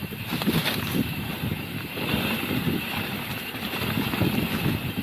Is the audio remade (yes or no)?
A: no